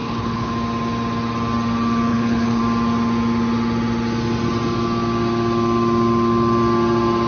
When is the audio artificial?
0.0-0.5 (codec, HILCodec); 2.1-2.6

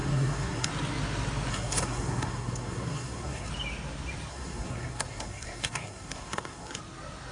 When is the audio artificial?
0.0-0.7 (codec, SNAC); 1.5-3.5; 4.3-6.8

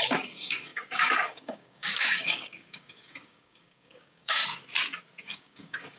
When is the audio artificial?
0.0-4.4 (codec, DAC); 5.2-6.0

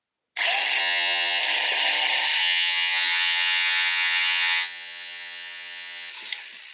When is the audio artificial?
0.8-1.4 (vocoder, HiFi-GAN); 2.4-6.1

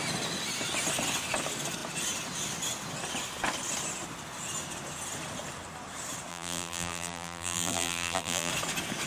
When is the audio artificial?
6.3-8.5 (vocoder, BigVGAN v2)

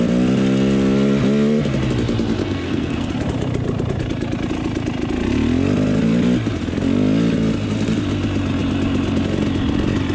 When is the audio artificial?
2.4-3.1 (codec, SNAC)